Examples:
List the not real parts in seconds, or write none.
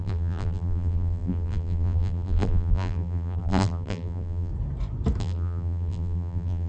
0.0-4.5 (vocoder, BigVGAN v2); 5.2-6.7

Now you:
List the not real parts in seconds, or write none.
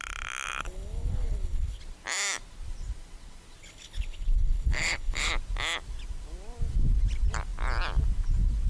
0.6-1.8 (codec, HILCodec); 3.6-5.3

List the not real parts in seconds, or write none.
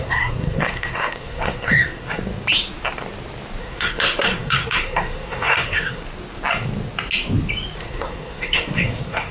0.0-2.2 (codec, SNAC); 3.6-6.0; 7.8-9.3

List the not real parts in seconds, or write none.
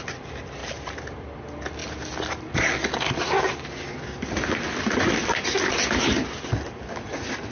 none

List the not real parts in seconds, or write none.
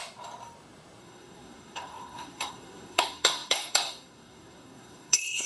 1.0-5.5 (codec, SNAC)